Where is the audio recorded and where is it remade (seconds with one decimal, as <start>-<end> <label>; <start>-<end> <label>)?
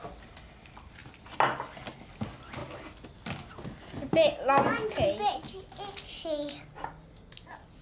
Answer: 0.0-7.8 recorded